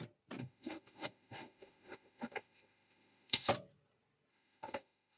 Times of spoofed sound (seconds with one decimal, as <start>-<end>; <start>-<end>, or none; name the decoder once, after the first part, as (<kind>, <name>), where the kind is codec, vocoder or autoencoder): 0.4-3.5 (autoencoder, DAC-VAE); 4.3-5.2